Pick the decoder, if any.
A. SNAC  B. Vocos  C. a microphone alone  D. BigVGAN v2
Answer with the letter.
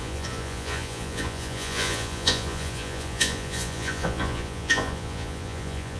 B